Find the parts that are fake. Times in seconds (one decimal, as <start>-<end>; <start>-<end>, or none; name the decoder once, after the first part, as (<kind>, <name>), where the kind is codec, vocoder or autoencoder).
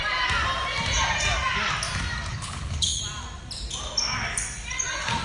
2.3-3.0 (codec, HILCodec)